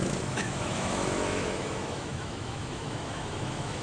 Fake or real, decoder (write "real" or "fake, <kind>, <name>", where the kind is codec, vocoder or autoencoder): fake, autoencoder, DAC-VAE